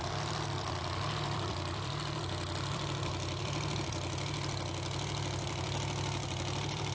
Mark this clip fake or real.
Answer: fake